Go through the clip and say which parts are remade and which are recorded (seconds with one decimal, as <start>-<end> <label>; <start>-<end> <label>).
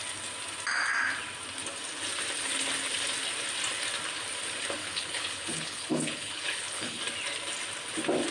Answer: 0.0-4.8 recorded; 4.8-7.0 remade; 7.0-8.3 recorded